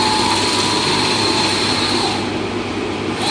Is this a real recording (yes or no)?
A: no